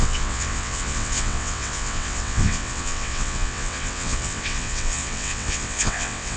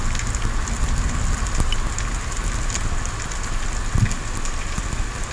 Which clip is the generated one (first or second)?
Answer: first